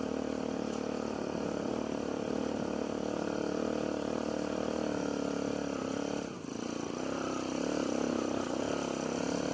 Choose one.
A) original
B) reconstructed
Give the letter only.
A